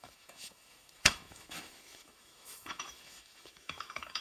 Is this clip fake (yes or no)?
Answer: yes